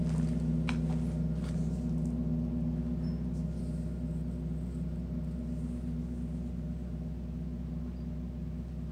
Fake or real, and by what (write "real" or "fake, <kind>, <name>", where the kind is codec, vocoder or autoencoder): real